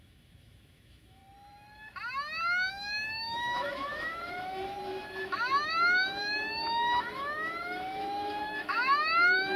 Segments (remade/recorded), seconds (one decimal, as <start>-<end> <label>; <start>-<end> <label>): 0.0-1.2 remade; 1.2-2.7 recorded; 2.7-9.6 remade